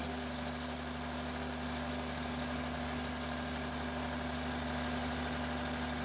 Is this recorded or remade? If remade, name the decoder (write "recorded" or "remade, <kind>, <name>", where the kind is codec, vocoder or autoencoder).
recorded